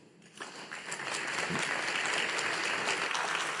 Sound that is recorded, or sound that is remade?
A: recorded